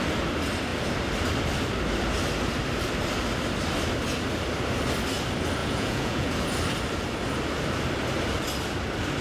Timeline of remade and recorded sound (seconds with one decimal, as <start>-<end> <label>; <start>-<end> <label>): 0.0-5.6 recorded; 5.6-6.3 remade; 6.3-9.2 recorded